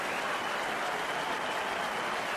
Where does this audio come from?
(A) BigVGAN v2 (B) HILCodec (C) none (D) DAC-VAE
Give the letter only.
C